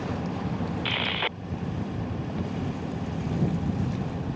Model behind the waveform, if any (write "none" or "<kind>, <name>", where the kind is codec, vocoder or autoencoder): vocoder, BigVGAN v2